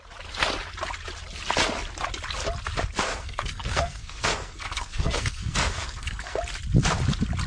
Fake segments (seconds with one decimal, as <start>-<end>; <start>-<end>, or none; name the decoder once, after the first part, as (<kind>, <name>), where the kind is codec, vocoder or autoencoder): 3.1-6.4 (codec, SNAC)